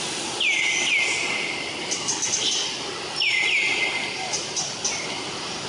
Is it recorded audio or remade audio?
recorded